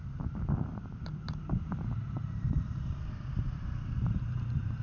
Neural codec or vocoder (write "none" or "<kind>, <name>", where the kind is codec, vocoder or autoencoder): vocoder, BigVGAN v2